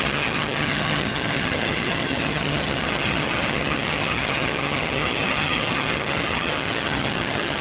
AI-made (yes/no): yes